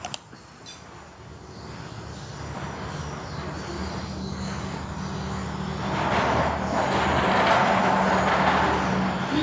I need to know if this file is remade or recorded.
recorded